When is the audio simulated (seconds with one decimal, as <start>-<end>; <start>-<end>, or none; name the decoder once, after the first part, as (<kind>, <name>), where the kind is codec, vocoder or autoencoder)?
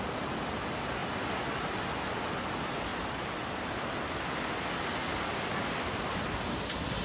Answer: none